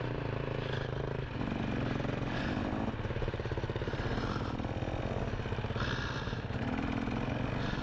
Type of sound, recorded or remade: recorded